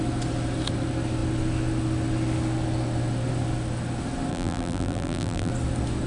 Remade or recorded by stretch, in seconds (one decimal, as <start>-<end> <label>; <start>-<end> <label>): 0.0-4.3 recorded; 4.3-5.5 remade; 5.5-6.1 recorded